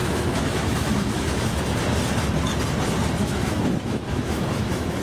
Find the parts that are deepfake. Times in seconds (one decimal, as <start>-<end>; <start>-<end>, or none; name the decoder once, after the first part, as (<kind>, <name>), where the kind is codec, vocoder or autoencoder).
0.0-1.6 (autoencoder, DAC-VAE); 3.2-5.0